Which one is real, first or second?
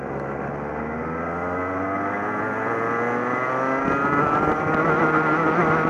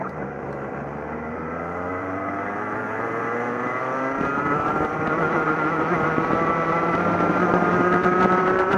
first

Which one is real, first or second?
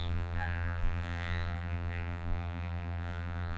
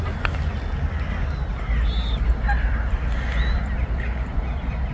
second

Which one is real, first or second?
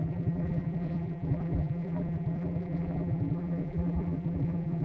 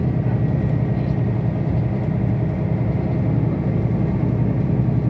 second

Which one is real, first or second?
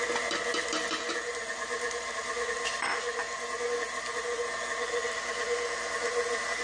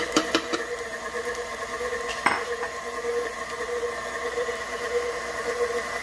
first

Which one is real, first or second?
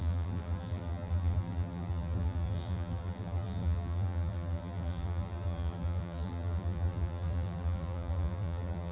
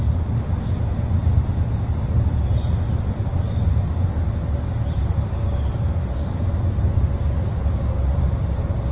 second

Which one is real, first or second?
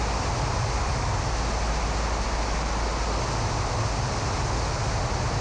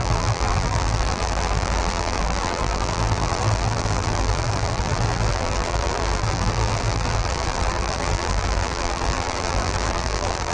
first